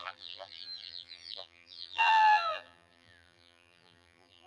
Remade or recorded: remade